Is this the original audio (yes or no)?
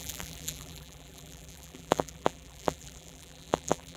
no